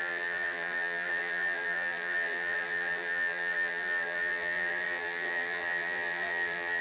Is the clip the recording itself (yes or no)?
no